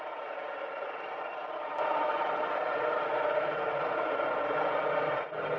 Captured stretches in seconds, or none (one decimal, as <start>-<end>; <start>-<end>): none